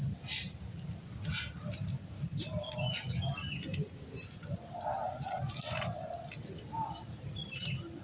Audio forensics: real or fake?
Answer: real